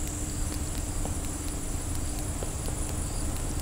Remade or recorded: recorded